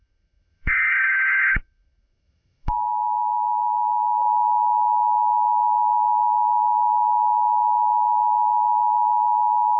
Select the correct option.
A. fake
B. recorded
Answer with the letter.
A